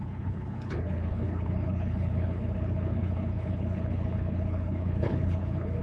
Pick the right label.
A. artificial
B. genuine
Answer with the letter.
A